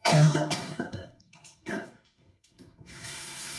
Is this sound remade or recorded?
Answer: remade